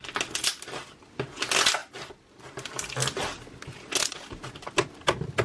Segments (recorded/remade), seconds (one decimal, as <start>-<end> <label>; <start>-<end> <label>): 0.0-1.8 recorded; 1.8-3.4 remade; 3.4-5.4 recorded